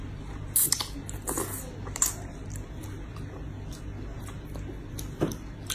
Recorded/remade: recorded